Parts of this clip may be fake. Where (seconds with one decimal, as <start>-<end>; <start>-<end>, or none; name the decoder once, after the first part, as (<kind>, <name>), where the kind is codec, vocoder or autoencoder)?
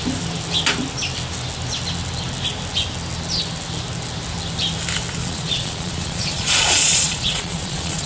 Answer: 5.2-8.1 (vocoder, Vocos)